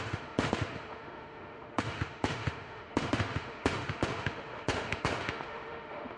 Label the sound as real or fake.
fake